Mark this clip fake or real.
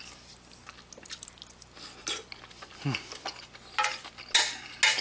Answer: real